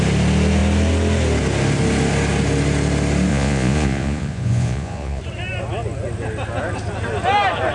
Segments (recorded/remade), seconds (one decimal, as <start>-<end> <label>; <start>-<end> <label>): 0.0-3.3 recorded; 3.3-5.2 remade; 5.2-7.7 recorded